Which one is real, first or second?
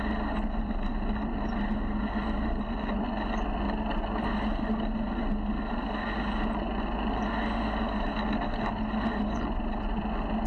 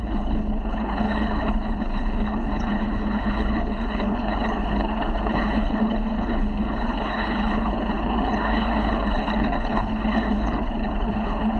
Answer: first